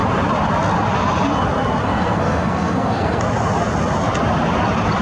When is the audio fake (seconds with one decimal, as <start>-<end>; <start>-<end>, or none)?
1.8-3.2